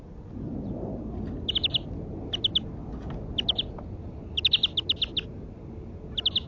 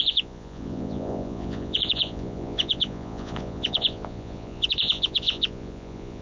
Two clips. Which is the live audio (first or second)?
first